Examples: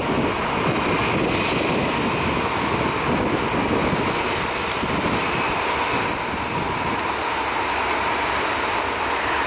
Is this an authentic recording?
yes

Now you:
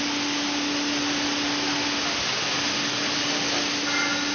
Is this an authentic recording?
yes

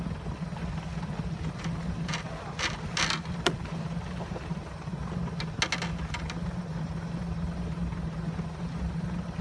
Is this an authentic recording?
yes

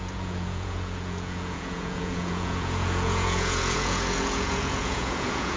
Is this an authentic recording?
no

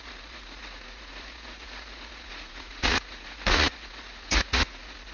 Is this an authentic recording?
no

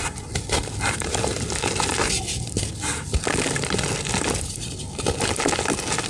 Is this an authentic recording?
yes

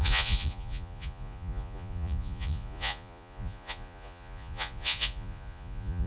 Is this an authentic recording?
no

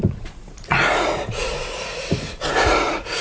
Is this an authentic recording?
no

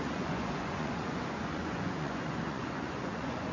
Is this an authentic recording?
no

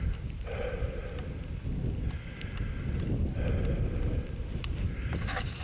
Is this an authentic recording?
yes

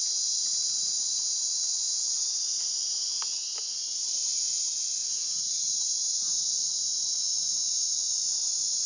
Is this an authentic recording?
yes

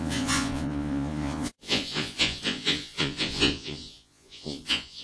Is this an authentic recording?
no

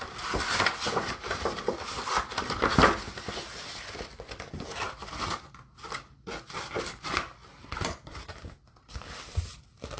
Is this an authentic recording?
yes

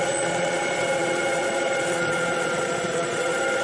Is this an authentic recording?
no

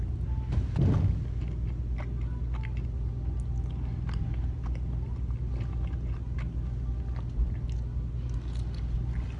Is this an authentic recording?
yes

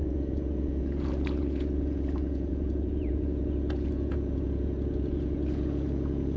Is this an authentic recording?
no